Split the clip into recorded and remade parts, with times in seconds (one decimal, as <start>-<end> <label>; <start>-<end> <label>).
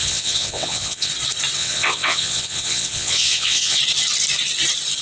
0.0-1.1 remade; 1.1-1.6 recorded; 1.6-3.8 remade; 3.8-5.0 recorded